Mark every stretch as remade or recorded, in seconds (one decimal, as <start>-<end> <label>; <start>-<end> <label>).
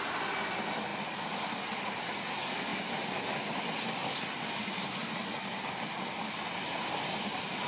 0.0-7.7 recorded